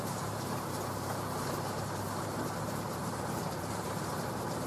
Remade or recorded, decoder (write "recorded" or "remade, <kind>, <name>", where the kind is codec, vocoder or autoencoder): remade, vocoder, BigVGAN v2